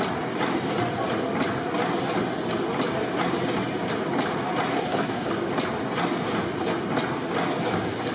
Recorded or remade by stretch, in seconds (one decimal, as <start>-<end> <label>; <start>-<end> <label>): 0.0-4.7 recorded; 4.7-5.3 remade; 5.3-8.1 recorded